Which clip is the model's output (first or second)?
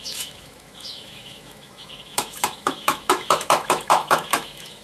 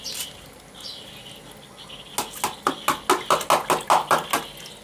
first